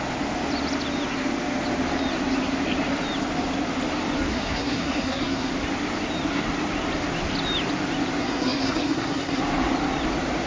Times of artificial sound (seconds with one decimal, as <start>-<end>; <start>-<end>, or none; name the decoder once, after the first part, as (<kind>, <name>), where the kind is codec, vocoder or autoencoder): 4.3-5.5 (codec, SNAC); 8.2-9.4